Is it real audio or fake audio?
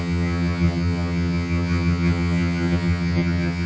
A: fake